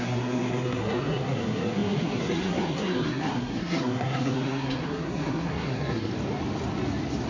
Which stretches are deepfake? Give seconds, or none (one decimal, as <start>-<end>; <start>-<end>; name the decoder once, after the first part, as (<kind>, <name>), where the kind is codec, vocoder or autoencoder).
0.0-6.1 (codec, SNAC)